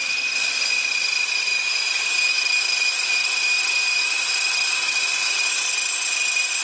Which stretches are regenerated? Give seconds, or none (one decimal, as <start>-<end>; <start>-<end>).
none

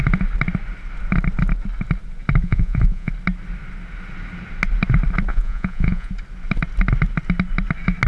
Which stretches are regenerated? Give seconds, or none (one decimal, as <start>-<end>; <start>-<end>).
2.4-3.1; 5.3-6.1

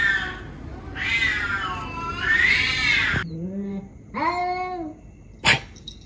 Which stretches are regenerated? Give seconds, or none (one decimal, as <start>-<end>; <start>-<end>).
0.7-4.4